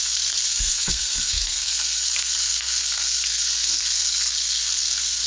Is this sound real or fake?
fake